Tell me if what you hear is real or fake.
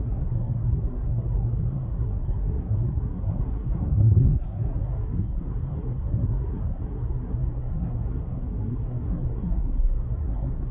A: fake